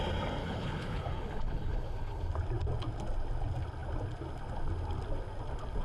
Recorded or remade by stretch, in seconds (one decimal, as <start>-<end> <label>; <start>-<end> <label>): 0.0-0.4 recorded; 0.4-2.3 remade; 2.3-5.8 recorded